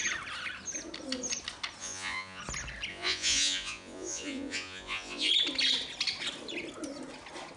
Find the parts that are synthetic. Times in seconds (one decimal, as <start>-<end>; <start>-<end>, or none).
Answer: 1.8-2.4; 2.9-5.3